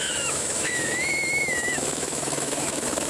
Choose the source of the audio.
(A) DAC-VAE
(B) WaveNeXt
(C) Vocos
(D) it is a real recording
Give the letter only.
A